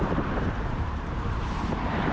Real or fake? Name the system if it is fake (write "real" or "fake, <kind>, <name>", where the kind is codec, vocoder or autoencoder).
fake, vocoder, BigVGAN v2